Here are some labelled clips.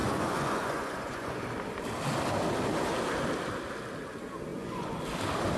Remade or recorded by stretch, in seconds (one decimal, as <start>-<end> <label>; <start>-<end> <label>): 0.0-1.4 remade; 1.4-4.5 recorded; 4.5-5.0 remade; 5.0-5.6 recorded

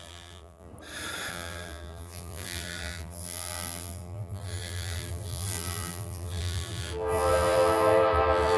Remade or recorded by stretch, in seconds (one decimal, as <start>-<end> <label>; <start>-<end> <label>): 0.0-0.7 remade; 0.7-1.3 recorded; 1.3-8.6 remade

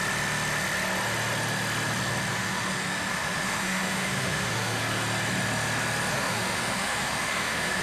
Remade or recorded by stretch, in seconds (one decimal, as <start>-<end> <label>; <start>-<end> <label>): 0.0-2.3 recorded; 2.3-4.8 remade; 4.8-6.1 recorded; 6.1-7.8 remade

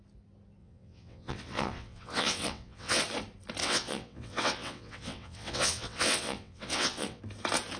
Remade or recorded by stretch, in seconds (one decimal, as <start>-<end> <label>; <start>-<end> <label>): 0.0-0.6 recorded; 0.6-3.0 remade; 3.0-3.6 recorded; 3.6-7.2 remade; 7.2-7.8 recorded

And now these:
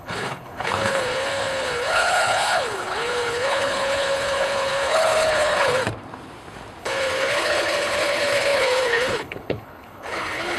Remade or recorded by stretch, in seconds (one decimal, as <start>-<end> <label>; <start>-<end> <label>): 0.0-5.8 remade; 5.8-6.8 recorded; 6.8-10.6 remade